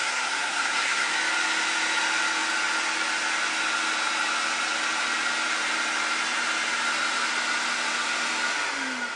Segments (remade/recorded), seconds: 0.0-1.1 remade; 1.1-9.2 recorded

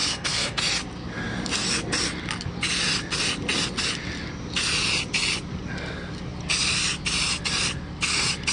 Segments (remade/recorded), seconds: 0.0-0.6 remade; 0.6-8.5 recorded